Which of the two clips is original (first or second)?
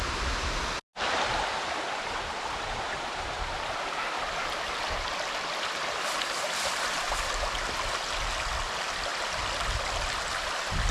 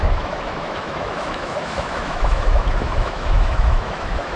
first